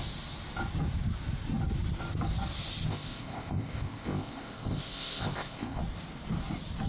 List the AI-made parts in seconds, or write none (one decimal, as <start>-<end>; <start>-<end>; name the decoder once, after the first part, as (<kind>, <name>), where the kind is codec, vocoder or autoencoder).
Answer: 2.9-5.8 (codec, ZipCodec)